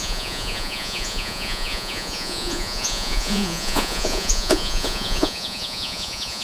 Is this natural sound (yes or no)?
no